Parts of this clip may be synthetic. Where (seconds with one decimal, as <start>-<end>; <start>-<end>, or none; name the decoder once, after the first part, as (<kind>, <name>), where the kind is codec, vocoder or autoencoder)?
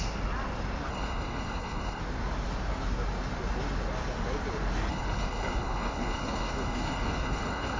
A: 0.9-2.0 (codec, HILCodec); 4.9-7.8